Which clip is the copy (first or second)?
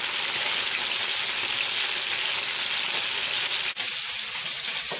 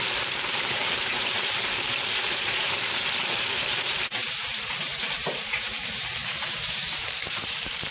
second